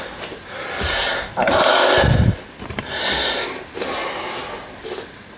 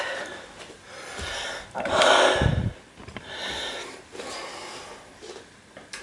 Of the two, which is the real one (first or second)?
first